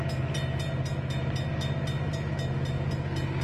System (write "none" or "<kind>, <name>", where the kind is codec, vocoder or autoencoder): none